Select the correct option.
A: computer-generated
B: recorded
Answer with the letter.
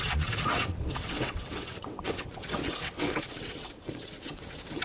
A